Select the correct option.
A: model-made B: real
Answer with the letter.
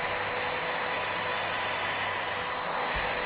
B